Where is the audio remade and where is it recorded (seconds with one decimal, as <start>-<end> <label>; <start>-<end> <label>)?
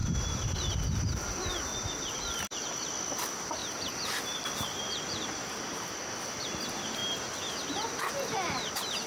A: 0.0-1.0 remade; 1.0-3.6 recorded; 3.6-5.5 remade; 5.5-9.1 recorded